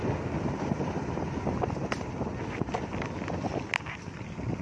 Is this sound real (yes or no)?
yes